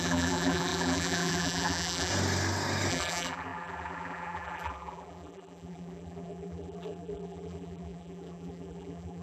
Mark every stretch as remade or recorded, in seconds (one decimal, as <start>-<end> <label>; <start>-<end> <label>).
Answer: 0.0-2.1 remade; 2.1-2.9 recorded; 2.9-9.2 remade